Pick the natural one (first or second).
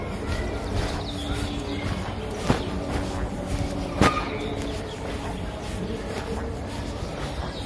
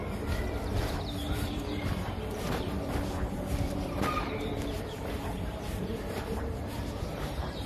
first